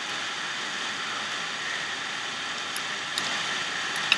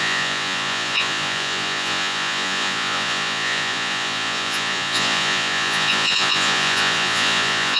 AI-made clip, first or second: second